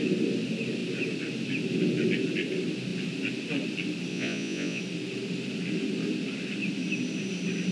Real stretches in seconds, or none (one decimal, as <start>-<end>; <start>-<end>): 0.0-4.1; 4.8-7.7